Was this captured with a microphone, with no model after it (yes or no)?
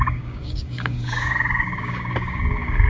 no